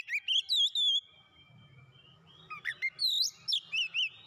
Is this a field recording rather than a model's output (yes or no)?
yes